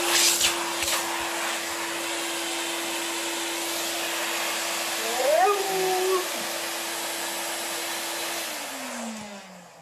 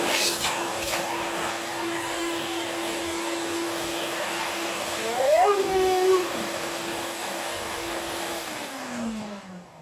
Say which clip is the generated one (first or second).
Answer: second